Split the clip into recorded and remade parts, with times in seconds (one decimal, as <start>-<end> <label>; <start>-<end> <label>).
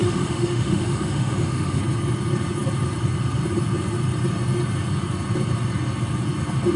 0.0-1.8 remade; 1.8-6.8 recorded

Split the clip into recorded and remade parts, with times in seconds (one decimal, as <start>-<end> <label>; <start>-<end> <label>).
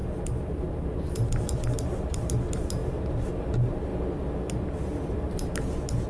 0.0-0.5 recorded; 0.5-3.9 remade; 3.9-5.1 recorded; 5.1-6.1 remade